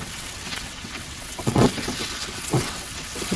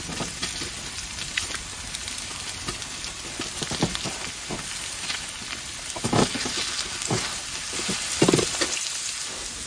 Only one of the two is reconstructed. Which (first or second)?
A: first